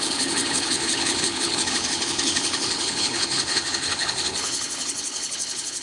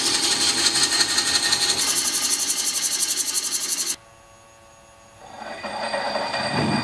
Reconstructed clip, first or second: first